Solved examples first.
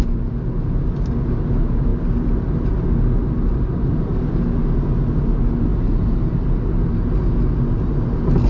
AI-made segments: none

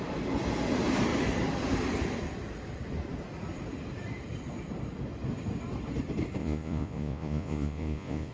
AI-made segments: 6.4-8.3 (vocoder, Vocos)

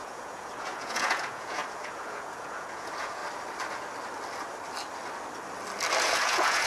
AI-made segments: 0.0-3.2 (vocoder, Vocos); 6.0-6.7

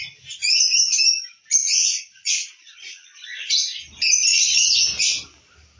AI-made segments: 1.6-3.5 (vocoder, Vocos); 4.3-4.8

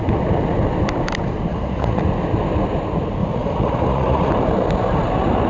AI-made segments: 1.5-2.0 (vocoder, Vocos); 3.2-4.3

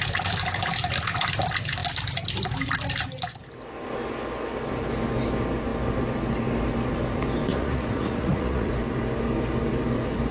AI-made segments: 7.5-8.7 (vocoder, Vocos)

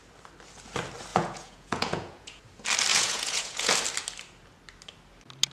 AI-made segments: 1.1-2.4 (vocoder, Vocos); 2.9-3.7